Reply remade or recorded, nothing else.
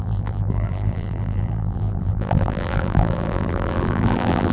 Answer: remade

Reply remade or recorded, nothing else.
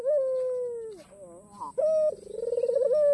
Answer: recorded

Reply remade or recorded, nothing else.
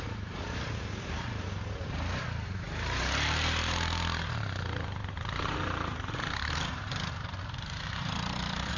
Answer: remade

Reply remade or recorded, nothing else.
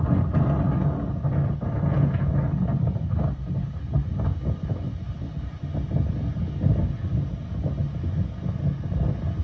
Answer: recorded